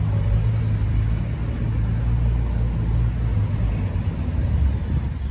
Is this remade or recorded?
recorded